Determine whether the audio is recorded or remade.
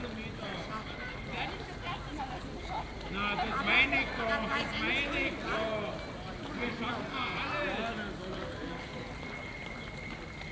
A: recorded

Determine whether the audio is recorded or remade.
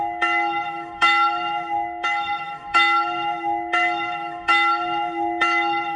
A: remade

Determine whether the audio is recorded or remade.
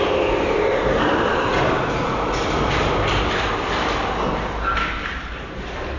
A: remade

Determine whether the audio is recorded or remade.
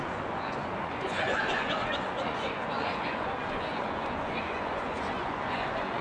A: remade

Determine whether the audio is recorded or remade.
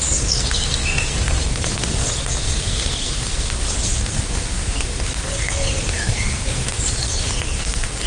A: remade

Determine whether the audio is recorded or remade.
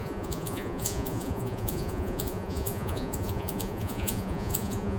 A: remade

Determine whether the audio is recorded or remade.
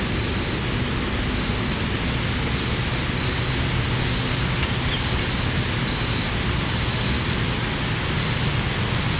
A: recorded